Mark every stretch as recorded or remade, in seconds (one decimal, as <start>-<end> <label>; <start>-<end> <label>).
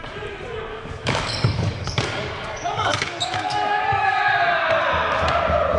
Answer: 0.0-0.7 recorded; 0.7-4.2 remade; 4.2-5.8 recorded